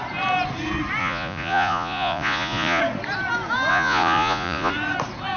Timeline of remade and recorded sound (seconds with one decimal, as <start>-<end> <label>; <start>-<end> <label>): 0.0-1.0 recorded; 1.0-2.8 remade; 2.8-3.7 recorded; 3.7-4.7 remade; 4.7-5.4 recorded

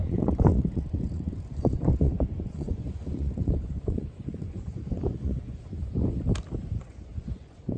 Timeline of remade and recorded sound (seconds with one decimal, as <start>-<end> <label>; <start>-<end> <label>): 0.0-5.8 remade; 5.8-6.8 recorded; 6.8-7.8 remade

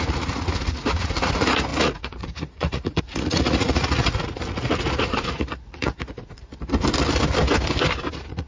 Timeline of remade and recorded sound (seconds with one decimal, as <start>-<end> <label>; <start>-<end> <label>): 0.0-6.5 remade; 6.5-8.1 recorded; 8.1-8.5 remade